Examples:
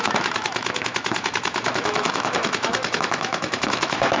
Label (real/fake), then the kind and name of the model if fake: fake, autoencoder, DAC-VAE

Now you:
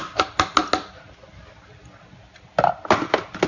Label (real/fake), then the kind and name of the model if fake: real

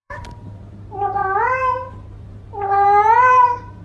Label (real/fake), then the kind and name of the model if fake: fake, vocoder, BigVGAN v2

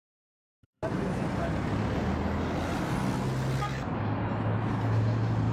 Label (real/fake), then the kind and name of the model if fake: real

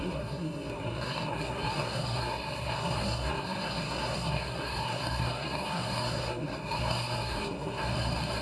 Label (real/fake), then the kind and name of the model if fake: fake, codec, SNAC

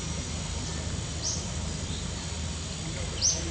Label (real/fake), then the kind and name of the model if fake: real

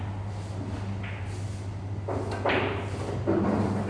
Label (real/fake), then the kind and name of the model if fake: real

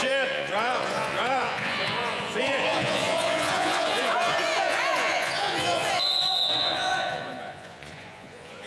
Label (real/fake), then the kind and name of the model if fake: fake, vocoder, Vocos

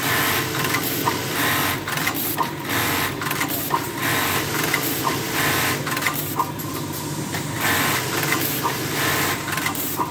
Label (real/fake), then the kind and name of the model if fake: real